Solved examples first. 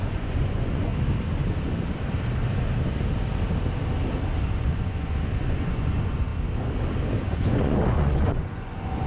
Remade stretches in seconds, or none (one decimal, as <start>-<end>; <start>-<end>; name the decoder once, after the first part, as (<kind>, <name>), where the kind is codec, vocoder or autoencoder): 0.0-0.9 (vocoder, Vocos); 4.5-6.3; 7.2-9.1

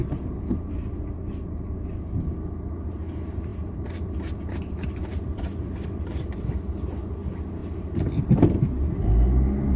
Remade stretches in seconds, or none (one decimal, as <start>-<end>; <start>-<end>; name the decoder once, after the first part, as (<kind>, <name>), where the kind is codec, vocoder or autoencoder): 3.5-6.5 (vocoder, BigVGAN v2)

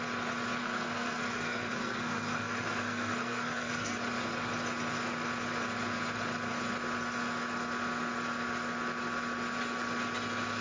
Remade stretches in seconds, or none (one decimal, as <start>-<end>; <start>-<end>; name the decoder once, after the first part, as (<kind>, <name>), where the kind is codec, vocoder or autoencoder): 0.6-4.0 (codec, SNAC)

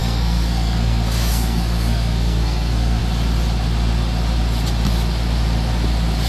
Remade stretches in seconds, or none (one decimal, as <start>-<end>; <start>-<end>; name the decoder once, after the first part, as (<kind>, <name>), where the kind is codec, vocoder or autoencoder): 0.0-3.0 (codec, SNAC)

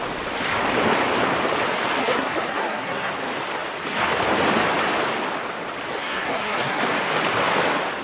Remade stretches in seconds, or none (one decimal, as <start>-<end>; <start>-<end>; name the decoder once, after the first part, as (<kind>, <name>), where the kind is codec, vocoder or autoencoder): 2.0-3.1 (codec, SNAC); 6.0-6.8